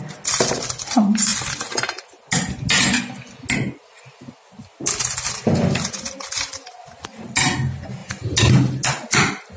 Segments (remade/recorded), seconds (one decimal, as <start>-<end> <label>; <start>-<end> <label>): 0.0-9.6 recorded